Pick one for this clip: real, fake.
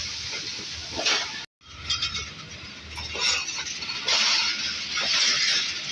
real